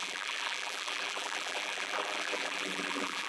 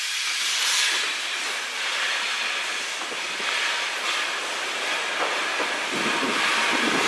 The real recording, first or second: second